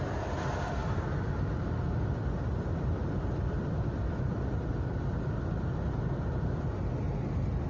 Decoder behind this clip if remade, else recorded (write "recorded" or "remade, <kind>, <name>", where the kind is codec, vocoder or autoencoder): recorded